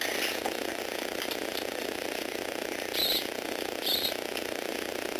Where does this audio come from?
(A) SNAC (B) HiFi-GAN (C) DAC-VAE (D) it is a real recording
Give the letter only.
D